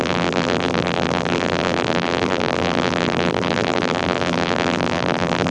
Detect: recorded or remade remade